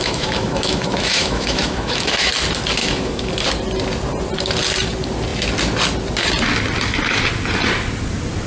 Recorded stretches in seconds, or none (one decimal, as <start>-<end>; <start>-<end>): 2.3-2.8; 3.3-8.5